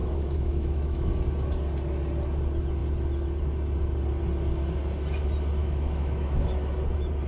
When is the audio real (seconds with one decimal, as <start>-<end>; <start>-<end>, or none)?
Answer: 1.1-5.6; 6.5-7.3